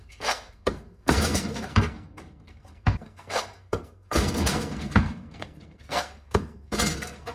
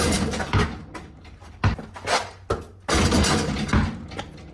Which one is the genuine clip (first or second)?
second